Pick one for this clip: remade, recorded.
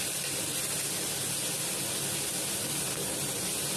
recorded